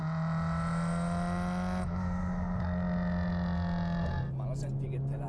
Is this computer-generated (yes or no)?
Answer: no